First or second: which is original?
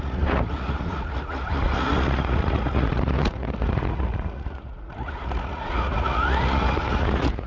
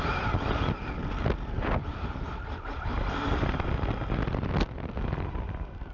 second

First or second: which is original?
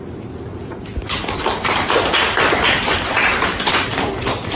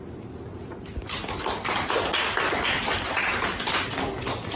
second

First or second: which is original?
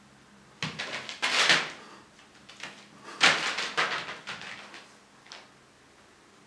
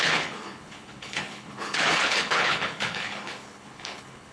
first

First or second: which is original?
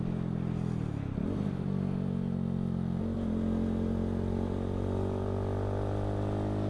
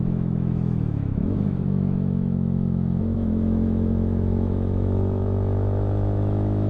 first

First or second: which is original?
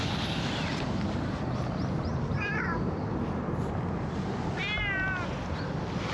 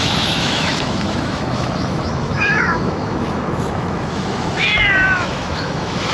first